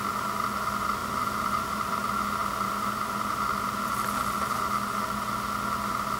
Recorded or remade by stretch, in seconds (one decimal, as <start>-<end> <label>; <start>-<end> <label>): 0.0-1.0 recorded; 1.0-1.9 remade; 1.9-2.4 recorded; 2.4-3.3 remade; 3.3-6.2 recorded